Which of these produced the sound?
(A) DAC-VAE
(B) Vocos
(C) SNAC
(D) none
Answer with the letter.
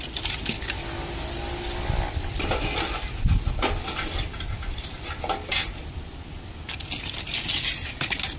D